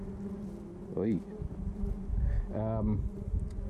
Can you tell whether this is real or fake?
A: real